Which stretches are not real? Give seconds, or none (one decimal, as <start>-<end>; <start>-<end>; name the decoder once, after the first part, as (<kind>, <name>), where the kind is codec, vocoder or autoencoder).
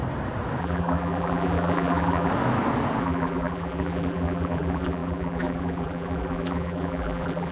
0.6-2.3 (vocoder, BigVGAN v2); 3.0-7.5